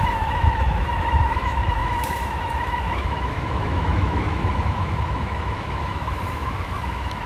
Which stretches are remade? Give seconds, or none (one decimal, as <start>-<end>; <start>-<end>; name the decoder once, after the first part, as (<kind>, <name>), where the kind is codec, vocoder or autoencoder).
0.0-7.3 (autoencoder, DAC-VAE)